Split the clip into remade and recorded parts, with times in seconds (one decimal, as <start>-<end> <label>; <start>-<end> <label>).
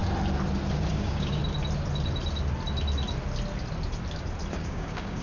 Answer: 0.0-0.9 recorded; 0.9-1.4 remade; 1.4-4.5 recorded; 4.5-5.2 remade